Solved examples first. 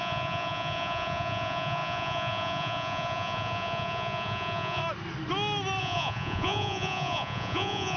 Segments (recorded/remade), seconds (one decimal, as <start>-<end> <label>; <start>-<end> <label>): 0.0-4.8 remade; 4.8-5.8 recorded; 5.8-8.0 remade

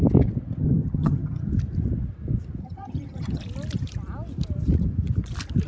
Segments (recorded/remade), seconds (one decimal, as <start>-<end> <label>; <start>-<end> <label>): 0.0-0.6 recorded; 0.6-1.5 remade; 1.5-2.6 recorded; 2.6-3.4 remade; 3.4-5.7 recorded

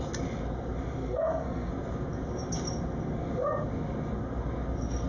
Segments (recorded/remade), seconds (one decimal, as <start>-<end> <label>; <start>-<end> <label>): 0.0-1.0 recorded; 1.0-1.7 remade; 1.7-5.1 recorded

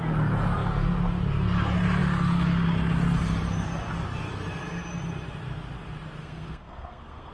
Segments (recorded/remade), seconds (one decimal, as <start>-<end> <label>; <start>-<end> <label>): 0.0-6.2 recorded; 6.2-7.3 remade